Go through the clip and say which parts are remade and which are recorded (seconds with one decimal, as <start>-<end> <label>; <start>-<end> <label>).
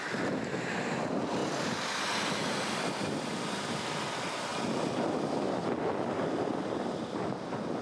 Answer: 0.0-7.8 recorded